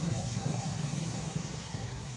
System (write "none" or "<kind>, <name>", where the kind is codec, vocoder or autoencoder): codec, SNAC